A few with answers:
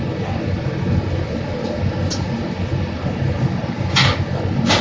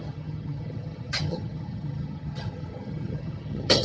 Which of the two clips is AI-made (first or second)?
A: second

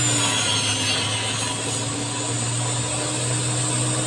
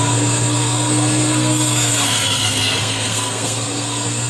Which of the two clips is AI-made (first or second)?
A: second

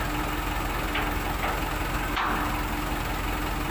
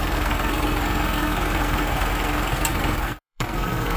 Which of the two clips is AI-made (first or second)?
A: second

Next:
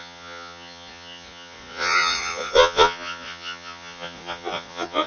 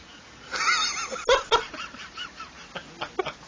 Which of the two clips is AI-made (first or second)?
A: first